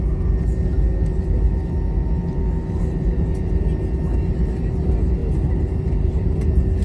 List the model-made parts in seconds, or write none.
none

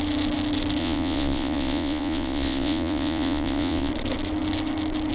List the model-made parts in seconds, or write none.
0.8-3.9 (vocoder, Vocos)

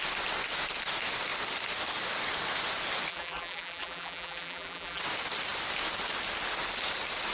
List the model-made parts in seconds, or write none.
3.1-5.0 (vocoder, BigVGAN v2)